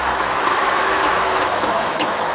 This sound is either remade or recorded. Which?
remade